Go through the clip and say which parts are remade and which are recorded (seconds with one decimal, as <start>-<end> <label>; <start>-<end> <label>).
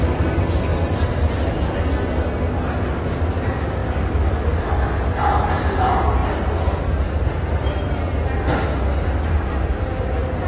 0.0-0.7 recorded; 0.7-1.8 remade; 1.8-3.8 recorded; 3.8-4.7 remade; 4.7-10.5 recorded